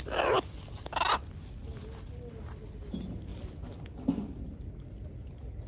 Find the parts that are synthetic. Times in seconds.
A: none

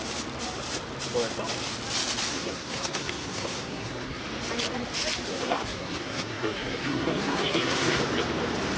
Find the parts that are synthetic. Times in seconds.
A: 2.3-4.2 (codec, SNAC); 5.3-8.0